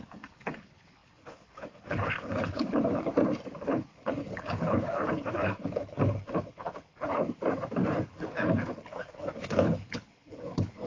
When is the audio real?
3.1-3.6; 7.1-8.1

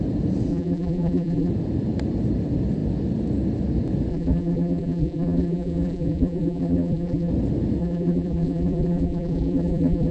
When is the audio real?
0.0-0.5; 1.5-4.1; 7.3-7.8

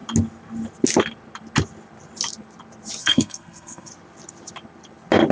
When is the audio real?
0.0-3.0; 3.9-5.3